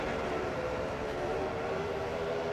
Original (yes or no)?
no